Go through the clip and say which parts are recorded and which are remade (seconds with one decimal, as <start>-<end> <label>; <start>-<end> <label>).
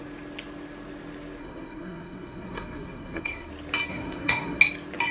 0.0-1.4 recorded; 1.4-3.5 remade; 3.5-3.9 recorded; 3.9-4.6 remade; 4.6-5.1 recorded